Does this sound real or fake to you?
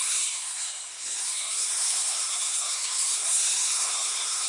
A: fake